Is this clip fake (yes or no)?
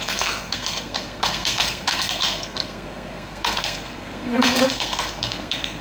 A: yes